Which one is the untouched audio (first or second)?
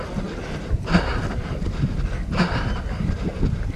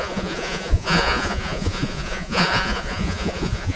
first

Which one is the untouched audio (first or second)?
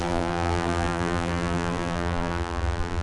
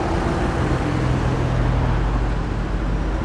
second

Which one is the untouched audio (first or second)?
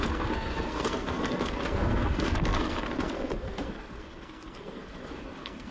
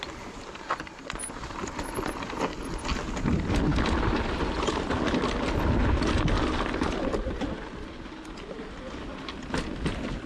second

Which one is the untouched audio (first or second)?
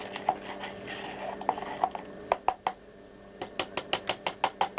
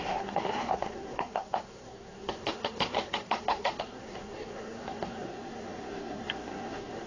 first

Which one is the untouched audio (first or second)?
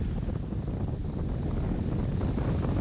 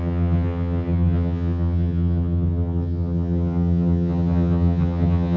first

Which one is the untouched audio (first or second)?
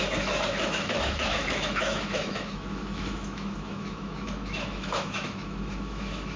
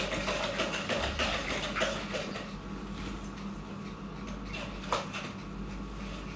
second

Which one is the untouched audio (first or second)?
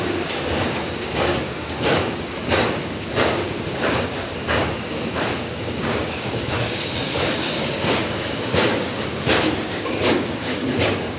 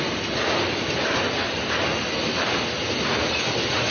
second